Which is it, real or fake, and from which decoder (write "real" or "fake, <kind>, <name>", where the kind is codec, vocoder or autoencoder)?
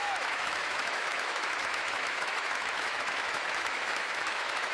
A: fake, autoencoder, DAC-VAE